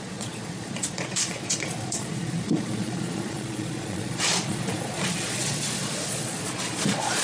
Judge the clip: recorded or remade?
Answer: remade